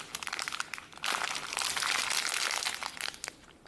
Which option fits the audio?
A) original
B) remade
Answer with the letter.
A